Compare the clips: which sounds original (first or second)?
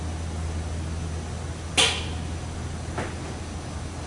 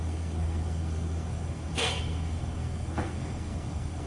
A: first